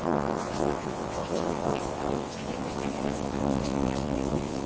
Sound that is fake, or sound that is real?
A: fake